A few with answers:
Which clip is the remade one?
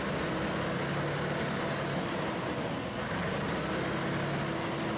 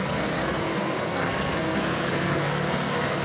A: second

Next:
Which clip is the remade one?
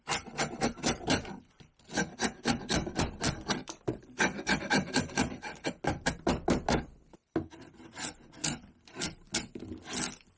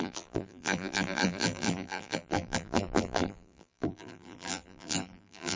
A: second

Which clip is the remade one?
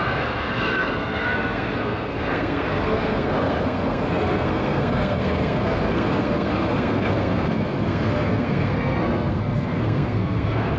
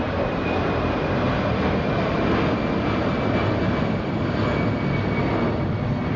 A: first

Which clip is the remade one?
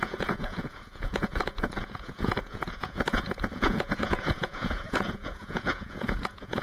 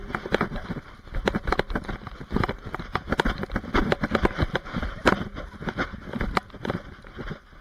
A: first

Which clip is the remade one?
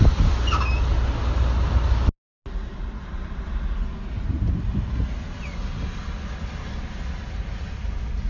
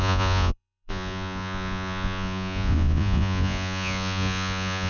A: second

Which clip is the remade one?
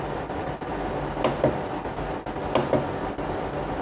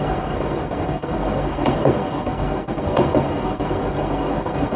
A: second